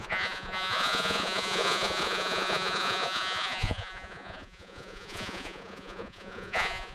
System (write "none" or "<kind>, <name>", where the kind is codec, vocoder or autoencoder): vocoder, Vocos